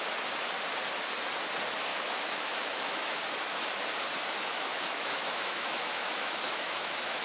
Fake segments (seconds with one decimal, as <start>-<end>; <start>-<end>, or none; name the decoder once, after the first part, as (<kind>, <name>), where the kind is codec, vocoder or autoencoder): 1.9-3.2 (autoencoder, DAC-VAE); 4.5-7.2